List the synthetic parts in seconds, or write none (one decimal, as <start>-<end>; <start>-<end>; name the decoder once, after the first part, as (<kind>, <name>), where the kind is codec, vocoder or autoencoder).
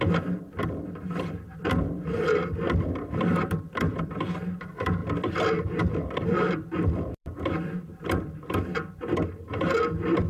0.0-5.0 (vocoder, BigVGAN v2); 5.8-10.3